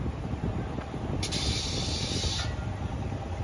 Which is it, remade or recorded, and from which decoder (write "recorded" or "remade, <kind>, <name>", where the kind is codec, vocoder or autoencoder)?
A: recorded